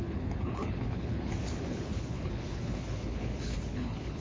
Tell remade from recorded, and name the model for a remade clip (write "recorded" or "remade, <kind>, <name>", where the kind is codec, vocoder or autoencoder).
remade, codec, HILCodec